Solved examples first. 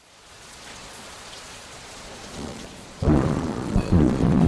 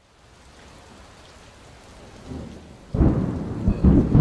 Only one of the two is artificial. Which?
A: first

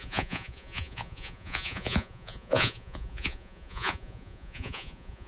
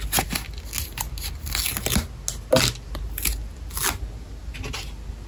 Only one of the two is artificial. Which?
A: first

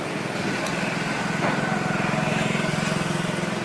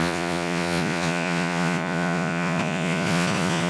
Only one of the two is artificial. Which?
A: second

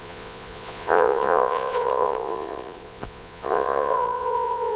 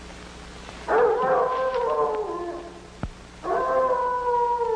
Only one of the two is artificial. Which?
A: first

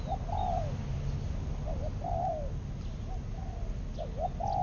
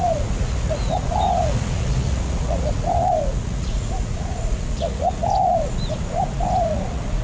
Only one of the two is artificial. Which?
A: second